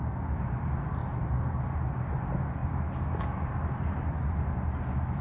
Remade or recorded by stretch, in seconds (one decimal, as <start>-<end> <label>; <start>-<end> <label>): 0.0-5.2 recorded